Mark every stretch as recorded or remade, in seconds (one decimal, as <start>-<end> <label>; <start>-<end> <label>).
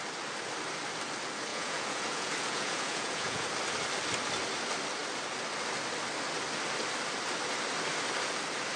0.0-1.5 recorded; 1.5-3.5 remade; 3.5-8.8 recorded